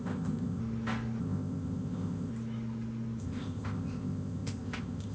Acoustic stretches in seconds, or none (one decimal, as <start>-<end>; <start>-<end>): 0.6-1.2; 2.3-3.2